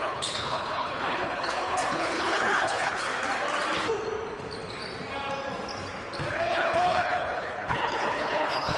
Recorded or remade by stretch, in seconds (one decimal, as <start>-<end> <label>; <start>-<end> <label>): 0.0-3.1 remade; 3.1-6.3 recorded; 6.3-8.8 remade